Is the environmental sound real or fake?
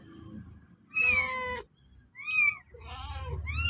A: real